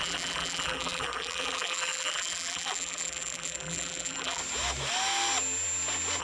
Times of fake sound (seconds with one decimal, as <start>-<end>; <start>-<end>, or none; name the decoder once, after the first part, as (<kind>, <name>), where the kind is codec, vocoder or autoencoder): 0.0-4.4 (vocoder, BigVGAN v2)